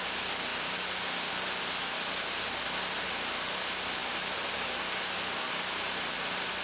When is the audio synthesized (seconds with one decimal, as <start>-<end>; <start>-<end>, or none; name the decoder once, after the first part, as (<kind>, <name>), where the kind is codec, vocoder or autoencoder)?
none